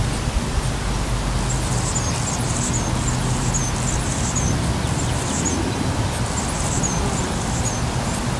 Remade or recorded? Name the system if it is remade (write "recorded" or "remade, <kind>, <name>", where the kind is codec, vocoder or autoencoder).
recorded